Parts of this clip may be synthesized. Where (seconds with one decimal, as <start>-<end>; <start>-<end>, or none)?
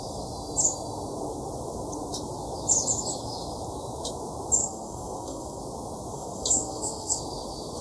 4.6-5.6; 6.1-7.2